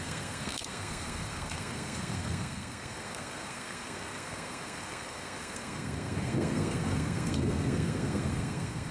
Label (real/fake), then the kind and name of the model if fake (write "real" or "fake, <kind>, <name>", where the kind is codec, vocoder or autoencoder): fake, codec, SNAC